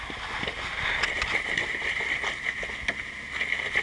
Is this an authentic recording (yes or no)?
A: yes